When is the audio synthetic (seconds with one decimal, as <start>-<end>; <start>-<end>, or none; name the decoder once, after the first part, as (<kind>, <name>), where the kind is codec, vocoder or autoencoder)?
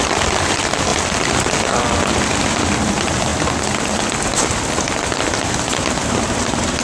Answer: 0.0-0.9 (vocoder, BigVGAN v2); 1.8-3.3; 5.6-6.8